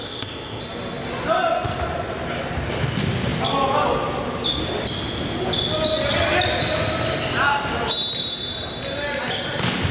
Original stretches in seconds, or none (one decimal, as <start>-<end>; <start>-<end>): 0.6-9.9